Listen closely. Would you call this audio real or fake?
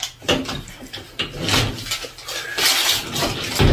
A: real